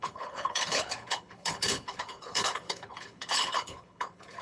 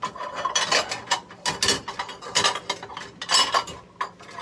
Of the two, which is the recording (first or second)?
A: second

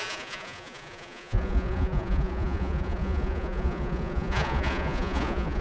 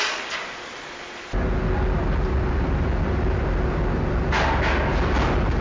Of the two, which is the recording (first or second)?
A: second